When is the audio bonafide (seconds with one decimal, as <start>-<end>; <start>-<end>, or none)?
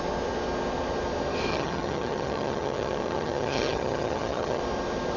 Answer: 0.0-1.5; 4.6-5.2